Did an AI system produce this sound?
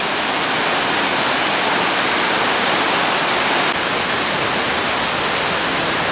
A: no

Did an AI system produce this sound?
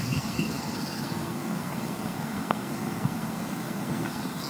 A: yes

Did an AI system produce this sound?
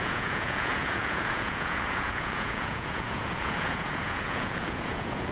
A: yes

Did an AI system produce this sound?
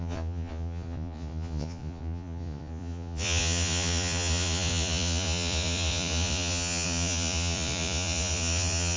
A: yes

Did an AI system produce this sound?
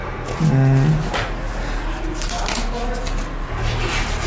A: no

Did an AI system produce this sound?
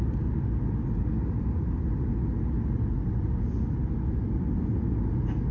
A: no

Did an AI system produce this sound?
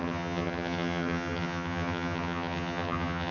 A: yes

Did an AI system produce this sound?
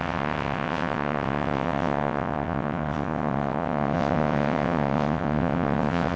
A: yes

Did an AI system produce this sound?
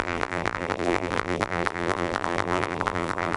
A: yes